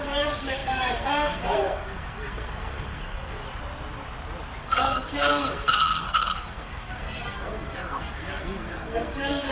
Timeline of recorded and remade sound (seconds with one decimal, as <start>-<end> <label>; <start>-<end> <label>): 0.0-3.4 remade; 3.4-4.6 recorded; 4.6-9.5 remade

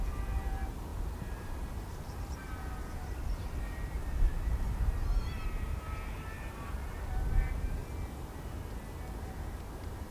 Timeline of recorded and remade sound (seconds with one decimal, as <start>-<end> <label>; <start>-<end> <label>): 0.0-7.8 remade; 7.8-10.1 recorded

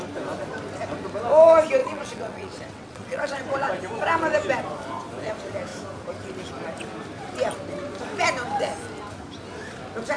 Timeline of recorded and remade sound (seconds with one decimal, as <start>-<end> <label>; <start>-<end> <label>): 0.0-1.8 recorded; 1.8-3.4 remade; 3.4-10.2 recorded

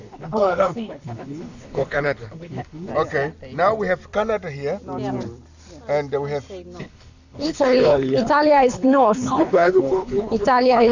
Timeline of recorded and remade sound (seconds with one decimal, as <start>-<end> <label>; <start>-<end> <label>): 0.0-2.9 remade; 2.9-6.8 recorded; 6.8-10.9 remade

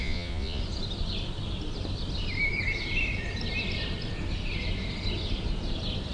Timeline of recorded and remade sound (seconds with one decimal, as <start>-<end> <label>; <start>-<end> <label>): 0.0-0.6 remade; 0.6-6.1 recorded